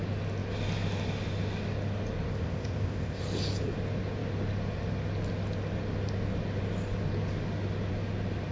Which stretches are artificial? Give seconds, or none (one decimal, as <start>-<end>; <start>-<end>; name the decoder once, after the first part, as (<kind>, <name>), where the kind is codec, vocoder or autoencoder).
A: 2.3-3.2 (codec, ZipCodec)

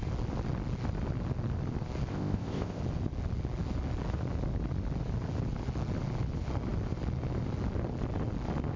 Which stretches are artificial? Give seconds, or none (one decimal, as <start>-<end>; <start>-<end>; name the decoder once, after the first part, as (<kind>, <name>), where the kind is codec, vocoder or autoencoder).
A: 2.1-2.8 (codec, ZipCodec)

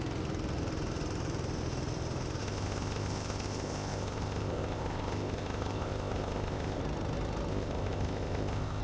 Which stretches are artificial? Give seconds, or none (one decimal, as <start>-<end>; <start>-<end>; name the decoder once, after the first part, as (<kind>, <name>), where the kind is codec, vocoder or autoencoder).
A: 2.4-6.8 (codec, ZipCodec); 7.5-8.8

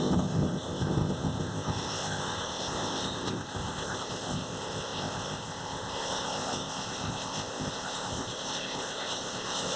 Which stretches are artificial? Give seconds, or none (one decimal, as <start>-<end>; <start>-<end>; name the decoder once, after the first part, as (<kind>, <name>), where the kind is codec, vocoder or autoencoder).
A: 0.0-9.8 (codec, ZipCodec)